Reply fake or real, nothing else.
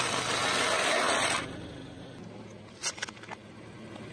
real